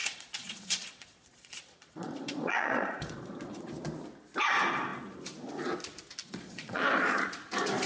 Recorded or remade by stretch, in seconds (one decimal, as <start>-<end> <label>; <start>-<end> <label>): 0.0-3.7 remade; 3.7-6.2 recorded; 6.2-6.8 remade; 6.8-7.9 recorded